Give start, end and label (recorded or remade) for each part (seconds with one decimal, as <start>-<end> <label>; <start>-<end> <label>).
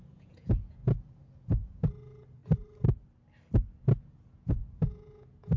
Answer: 0.0-2.4 remade; 2.4-4.0 recorded; 4.0-5.6 remade